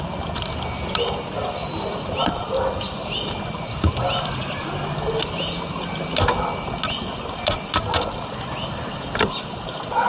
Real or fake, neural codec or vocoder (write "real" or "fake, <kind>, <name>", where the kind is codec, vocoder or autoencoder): real